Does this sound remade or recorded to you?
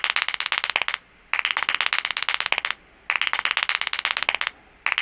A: recorded